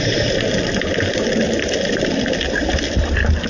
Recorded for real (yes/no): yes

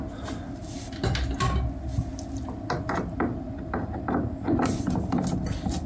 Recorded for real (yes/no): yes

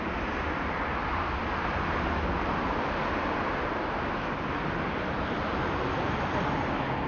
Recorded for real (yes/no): yes